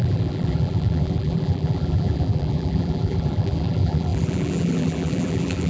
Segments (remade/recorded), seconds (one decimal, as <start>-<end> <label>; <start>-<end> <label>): 0.0-5.7 remade